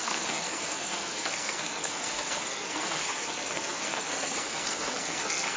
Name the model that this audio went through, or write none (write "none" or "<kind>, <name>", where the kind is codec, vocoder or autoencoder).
codec, SNAC